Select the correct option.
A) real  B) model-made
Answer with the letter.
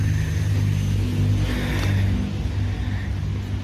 A